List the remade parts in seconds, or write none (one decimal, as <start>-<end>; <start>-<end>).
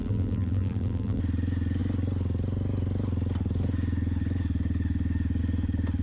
0.0-1.2